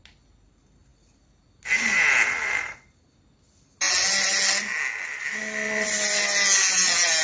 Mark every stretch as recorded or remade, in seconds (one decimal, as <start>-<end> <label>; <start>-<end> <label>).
0.0-7.2 recorded

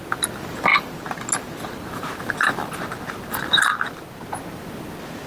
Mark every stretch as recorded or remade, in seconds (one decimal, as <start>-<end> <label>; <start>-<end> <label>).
0.0-5.3 recorded